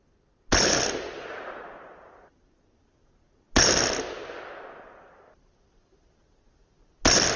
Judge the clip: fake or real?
real